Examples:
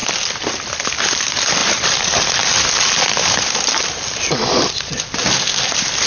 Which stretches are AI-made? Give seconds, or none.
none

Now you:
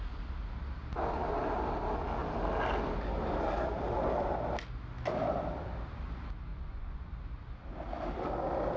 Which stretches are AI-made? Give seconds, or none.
6.5-7.1